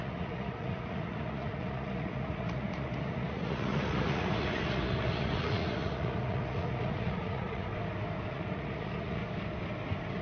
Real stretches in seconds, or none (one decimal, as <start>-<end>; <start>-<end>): 7.7-8.3; 9.2-10.2